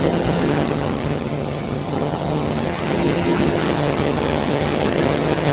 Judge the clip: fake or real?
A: fake